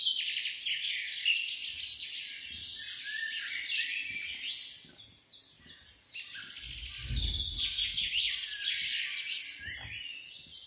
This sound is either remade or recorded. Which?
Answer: recorded